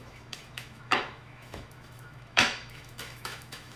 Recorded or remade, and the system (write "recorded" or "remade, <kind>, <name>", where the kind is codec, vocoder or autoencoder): remade, autoencoder, DAC-VAE